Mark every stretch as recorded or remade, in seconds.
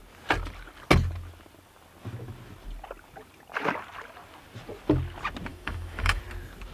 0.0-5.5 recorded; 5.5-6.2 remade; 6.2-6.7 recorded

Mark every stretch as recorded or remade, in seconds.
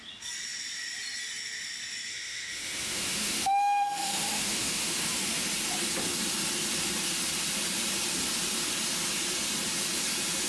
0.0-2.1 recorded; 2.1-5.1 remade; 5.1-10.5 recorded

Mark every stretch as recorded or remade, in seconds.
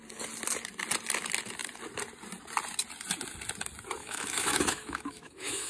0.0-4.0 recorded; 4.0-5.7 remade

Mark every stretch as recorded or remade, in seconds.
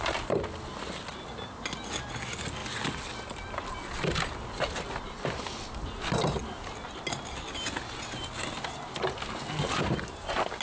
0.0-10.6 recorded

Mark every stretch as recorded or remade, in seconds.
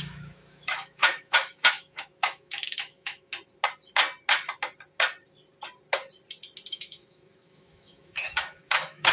0.0-3.3 remade; 3.3-6.7 recorded; 6.7-9.1 remade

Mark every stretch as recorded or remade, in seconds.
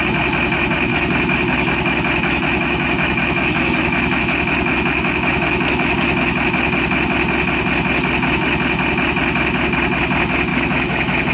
0.0-0.9 recorded; 0.9-4.2 remade; 4.2-4.7 recorded; 4.7-6.5 remade; 6.5-10.5 recorded; 10.5-11.3 remade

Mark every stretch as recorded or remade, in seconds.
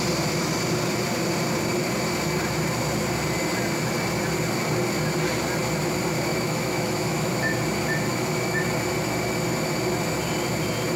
0.0-6.3 recorded; 6.3-7.3 remade; 7.3-8.1 recorded; 8.1-8.6 remade; 8.6-11.0 recorded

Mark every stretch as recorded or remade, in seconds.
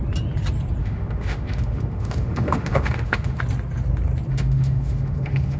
0.0-0.8 recorded; 0.8-3.4 remade; 3.4-4.3 recorded; 4.3-5.6 remade